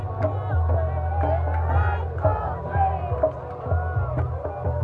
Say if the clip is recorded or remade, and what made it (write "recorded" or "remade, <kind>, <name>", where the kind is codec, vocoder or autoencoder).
recorded